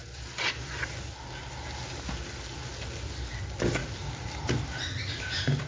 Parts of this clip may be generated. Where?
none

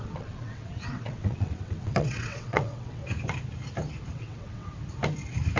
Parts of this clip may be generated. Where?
0.0-3.0 (vocoder, WaveNeXt); 4.1-4.7

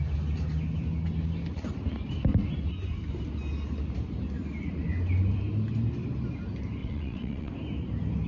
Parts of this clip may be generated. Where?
6.8-7.5 (vocoder, WaveNeXt)

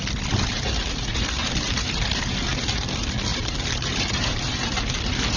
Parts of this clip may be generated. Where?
0.4-2.7 (vocoder, BigVGAN v2); 3.3-5.4

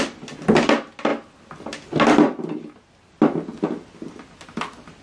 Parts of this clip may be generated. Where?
none